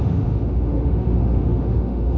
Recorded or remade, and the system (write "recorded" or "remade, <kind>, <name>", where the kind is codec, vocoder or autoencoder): remade, autoencoder, DAC-VAE